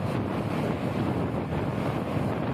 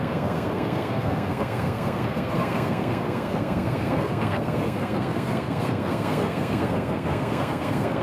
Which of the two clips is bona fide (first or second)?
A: first